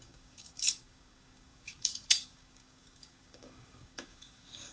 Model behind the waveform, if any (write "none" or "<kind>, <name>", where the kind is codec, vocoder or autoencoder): codec, DAC